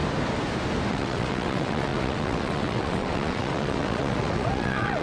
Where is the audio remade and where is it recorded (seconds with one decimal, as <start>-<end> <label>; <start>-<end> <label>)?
0.0-0.9 recorded; 0.9-5.0 remade